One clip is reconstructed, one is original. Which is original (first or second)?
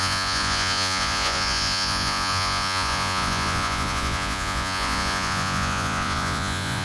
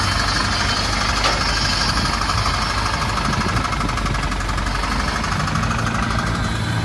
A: second